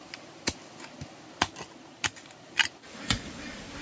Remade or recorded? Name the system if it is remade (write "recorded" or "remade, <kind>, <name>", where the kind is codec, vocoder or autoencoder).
recorded